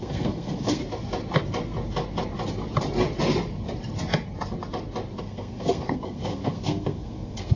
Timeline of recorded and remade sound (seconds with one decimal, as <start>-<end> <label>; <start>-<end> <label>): 0.0-0.8 remade; 0.8-5.2 recorded; 5.2-7.6 remade

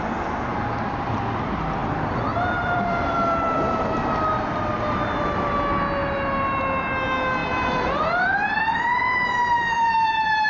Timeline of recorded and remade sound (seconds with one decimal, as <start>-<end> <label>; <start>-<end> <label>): 0.0-1.8 recorded; 1.8-4.1 remade; 4.1-7.4 recorded; 7.4-10.5 remade

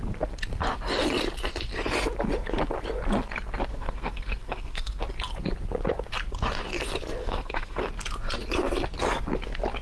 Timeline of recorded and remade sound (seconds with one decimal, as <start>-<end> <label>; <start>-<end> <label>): 0.0-3.7 recorded; 3.7-5.0 remade; 5.0-7.2 recorded; 7.2-7.9 remade; 7.9-9.8 recorded

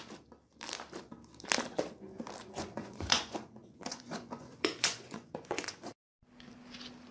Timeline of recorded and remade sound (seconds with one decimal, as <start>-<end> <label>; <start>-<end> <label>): 0.0-2.4 recorded; 2.4-6.2 remade; 6.2-7.1 recorded

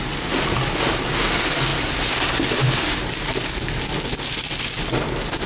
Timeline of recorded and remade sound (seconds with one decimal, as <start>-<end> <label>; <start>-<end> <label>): 0.0-1.7 recorded; 1.7-2.2 remade; 2.2-5.5 recorded

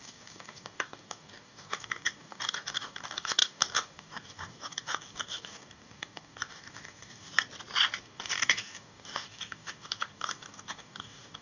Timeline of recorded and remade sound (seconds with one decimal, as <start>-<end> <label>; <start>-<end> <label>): 0.0-7.3 remade; 7.3-8.0 recorded; 8.0-11.4 remade

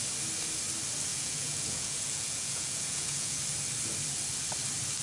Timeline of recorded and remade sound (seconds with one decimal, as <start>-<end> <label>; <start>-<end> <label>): 0.0-1.1 recorded; 1.1-3.4 remade; 3.4-5.0 recorded

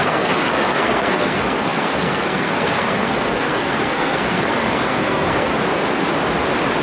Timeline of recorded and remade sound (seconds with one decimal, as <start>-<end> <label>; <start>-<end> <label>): 0.0-5.5 remade; 5.5-6.8 recorded